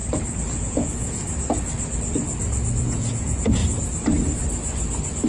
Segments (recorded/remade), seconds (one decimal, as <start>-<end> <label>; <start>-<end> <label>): 0.0-0.6 recorded; 0.6-1.2 remade; 1.2-2.8 recorded; 2.8-3.6 remade; 3.6-5.3 recorded